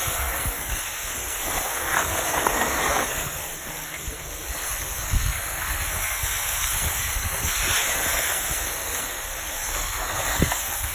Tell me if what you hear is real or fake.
fake